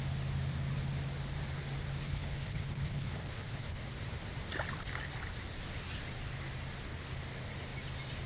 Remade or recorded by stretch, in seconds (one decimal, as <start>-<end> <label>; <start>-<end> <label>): 0.0-2.0 recorded; 2.0-3.9 remade; 3.9-8.3 recorded